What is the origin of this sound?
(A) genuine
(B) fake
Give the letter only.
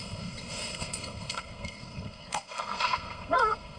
B